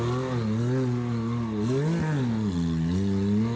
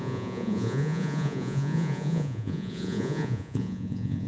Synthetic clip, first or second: second